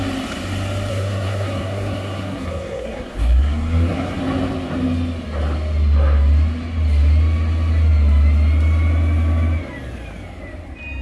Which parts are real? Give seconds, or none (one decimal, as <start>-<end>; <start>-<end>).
0.0-0.9; 4.2-11.0

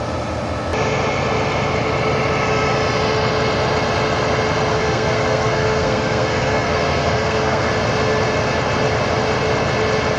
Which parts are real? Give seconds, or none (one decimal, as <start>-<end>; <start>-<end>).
0.0-4.7; 7.7-10.2

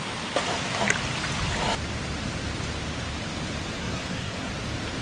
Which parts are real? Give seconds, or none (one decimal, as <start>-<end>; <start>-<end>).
0.0-3.8; 4.5-5.0

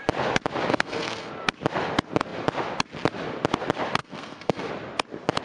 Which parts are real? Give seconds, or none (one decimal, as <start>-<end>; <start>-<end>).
0.0-0.7; 1.3-4.0; 4.7-5.4

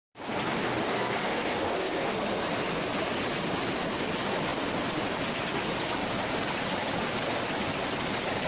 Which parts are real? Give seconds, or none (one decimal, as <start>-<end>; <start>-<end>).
0.0-0.9; 2.5-8.5